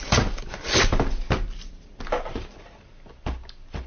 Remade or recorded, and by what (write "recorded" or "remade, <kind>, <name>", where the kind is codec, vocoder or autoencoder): recorded